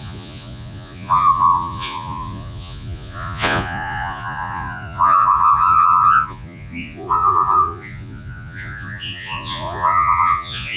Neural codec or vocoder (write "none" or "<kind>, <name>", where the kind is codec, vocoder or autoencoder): vocoder, Vocos